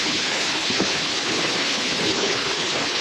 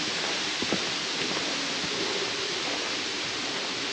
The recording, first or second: second